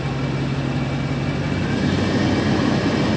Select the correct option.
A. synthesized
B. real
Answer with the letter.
B